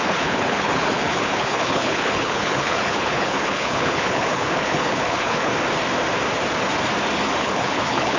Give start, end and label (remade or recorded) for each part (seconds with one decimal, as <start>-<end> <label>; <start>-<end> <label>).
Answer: 0.0-5.5 remade; 5.5-7.4 recorded; 7.4-8.2 remade